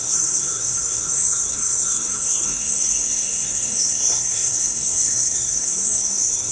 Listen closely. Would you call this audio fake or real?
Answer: fake